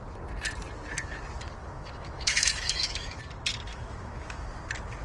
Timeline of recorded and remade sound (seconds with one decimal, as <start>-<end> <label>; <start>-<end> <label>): 0.0-1.6 recorded; 1.6-3.2 remade; 3.2-3.7 recorded; 3.7-4.5 remade; 4.5-5.0 recorded